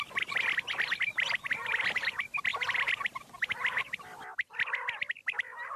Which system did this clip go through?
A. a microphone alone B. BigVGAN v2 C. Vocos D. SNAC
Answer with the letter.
B